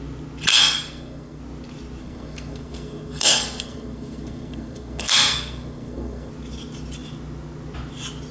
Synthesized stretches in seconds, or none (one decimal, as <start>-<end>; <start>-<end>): 0.5-1.4; 2.0-6.3